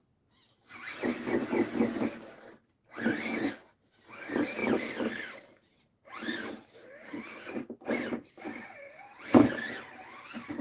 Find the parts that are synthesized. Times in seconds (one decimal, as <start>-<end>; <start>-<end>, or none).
4.6-9.6